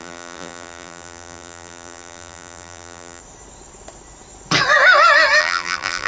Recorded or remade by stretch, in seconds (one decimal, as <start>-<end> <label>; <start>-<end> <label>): 0.0-3.2 remade; 3.2-5.4 recorded; 5.4-6.1 remade